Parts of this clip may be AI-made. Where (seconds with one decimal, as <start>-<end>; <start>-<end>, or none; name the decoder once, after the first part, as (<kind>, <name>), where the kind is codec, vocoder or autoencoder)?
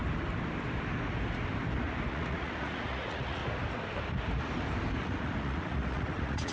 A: 2.1-3.4 (vocoder, Vocos); 5.0-6.5